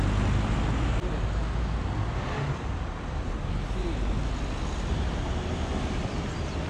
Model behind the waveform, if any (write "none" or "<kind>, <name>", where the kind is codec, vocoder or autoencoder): none